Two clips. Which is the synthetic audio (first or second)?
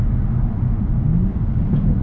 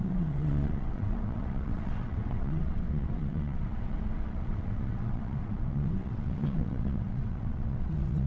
second